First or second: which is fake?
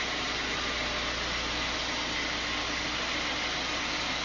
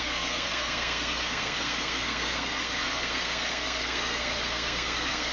second